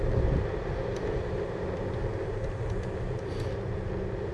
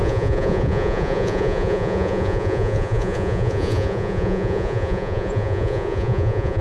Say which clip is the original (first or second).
first